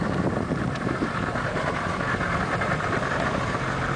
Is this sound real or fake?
fake